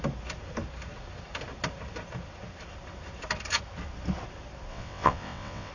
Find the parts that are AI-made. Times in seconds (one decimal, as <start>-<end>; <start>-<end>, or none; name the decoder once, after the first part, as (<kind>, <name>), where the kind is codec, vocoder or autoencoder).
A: 4.7-5.7 (vocoder, WaveNeXt)